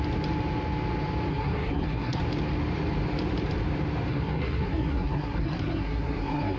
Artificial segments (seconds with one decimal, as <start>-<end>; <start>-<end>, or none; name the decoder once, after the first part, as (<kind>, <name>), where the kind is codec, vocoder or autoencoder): 1.3-2.2 (codec, SNAC); 4.1-6.6